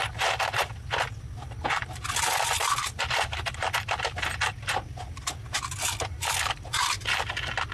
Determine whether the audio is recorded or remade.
recorded